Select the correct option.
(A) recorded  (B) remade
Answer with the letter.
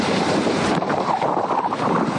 B